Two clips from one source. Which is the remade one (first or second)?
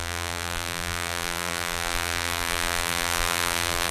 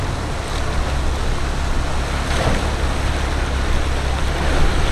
first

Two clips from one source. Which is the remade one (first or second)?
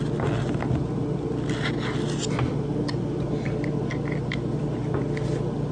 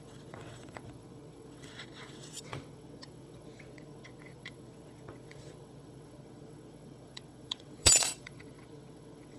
second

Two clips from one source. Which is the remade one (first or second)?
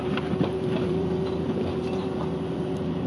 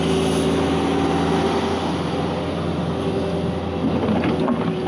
first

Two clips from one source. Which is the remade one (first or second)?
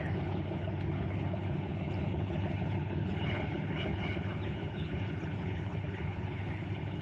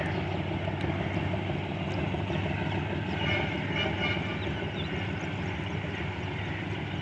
first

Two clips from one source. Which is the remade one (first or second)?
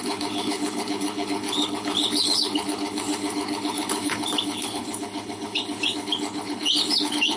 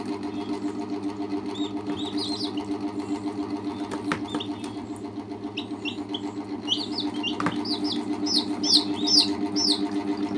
first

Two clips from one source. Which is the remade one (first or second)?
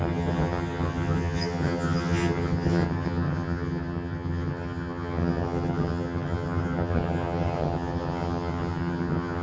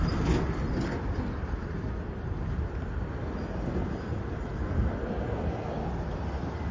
first